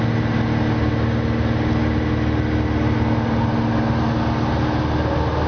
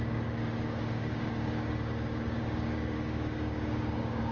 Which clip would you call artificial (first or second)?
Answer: second